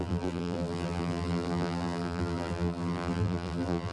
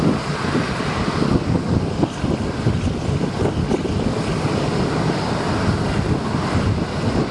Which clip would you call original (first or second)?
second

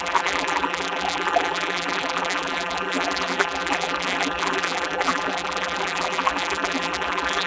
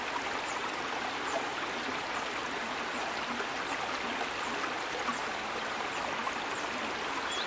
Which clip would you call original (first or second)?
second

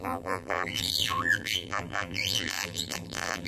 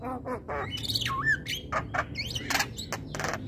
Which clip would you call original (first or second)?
second